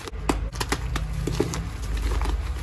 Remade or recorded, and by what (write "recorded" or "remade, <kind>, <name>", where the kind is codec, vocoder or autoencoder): recorded